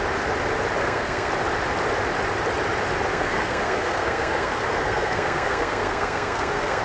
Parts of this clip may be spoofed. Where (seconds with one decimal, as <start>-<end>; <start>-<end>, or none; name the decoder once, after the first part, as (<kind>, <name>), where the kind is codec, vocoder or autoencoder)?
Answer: 0.8-1.3 (codec, SNAC); 3.1-6.8